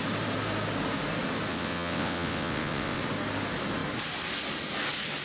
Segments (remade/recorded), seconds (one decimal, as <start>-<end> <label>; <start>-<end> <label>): 0.0-1.5 recorded; 1.5-3.0 remade; 3.0-5.2 recorded